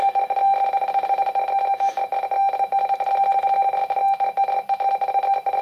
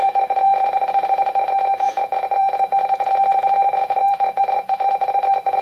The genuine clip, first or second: first